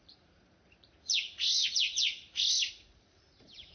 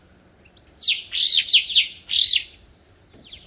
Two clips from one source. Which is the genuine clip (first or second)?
second